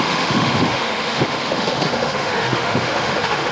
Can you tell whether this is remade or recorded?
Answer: remade